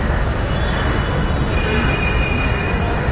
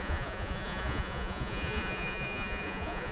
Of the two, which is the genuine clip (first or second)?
first